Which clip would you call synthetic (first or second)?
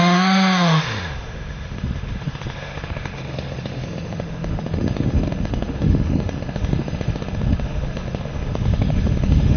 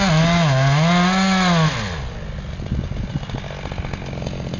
first